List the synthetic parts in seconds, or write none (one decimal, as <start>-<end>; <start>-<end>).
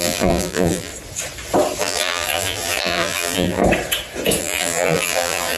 0.0-0.9; 1.8-3.6; 4.4-5.6